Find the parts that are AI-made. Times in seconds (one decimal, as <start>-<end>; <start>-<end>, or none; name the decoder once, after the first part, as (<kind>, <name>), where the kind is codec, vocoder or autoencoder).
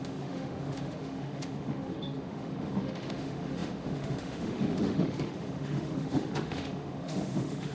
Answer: 0.0-7.7 (autoencoder, DAC-VAE)